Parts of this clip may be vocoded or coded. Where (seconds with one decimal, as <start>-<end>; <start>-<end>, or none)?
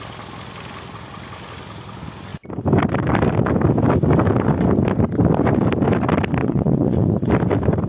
6.4-7.3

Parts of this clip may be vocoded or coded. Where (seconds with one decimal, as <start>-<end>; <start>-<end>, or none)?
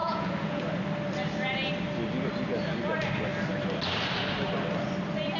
0.0-0.6